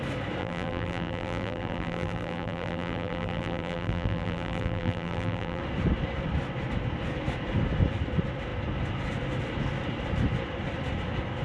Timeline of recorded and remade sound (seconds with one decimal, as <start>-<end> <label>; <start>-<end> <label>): 0.0-0.4 recorded; 0.4-5.6 remade; 5.6-11.4 recorded